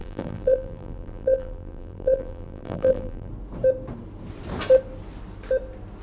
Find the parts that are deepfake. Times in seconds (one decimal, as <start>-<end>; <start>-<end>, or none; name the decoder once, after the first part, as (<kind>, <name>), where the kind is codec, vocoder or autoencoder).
0.0-3.3 (vocoder, BigVGAN v2)